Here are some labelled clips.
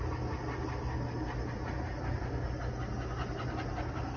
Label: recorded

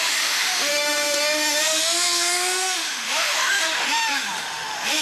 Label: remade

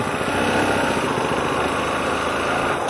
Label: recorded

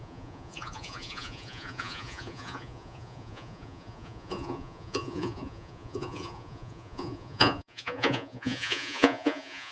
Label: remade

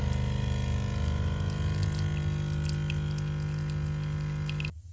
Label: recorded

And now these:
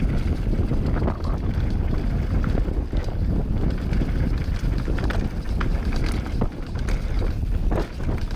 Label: recorded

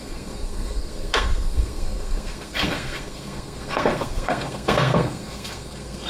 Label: remade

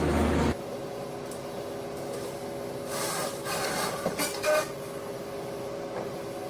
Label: recorded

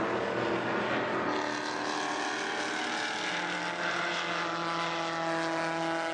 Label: recorded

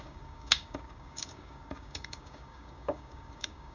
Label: remade